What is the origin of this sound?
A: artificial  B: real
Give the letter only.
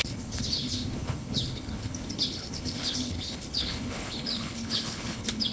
A